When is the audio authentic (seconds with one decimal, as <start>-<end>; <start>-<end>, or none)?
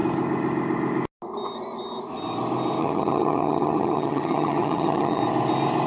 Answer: 0.0-2.8; 5.2-5.9